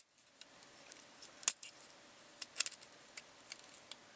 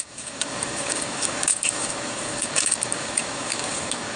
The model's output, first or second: second